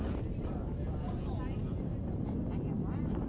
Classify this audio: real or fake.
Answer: real